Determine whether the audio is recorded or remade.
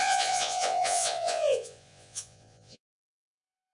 remade